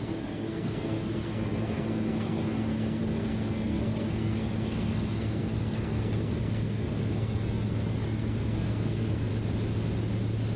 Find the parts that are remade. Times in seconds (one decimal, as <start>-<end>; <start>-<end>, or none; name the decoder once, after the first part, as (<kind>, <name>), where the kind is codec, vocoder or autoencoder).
0.0-9.3 (codec, SNAC)